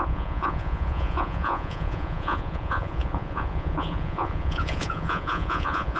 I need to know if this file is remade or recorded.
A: remade